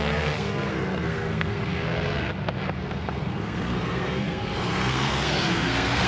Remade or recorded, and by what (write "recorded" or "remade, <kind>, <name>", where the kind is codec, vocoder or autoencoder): remade, codec, SNAC